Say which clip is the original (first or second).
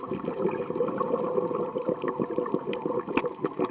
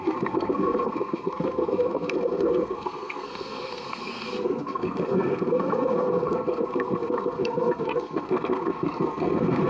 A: first